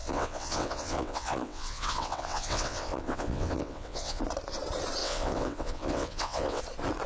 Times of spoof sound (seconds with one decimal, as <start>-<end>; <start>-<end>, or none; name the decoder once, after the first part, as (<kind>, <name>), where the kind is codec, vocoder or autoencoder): 0.0-4.2 (vocoder, WaveNeXt); 5.0-6.6